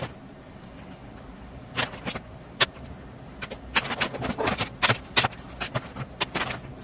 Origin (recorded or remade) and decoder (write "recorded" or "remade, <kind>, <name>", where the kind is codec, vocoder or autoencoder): recorded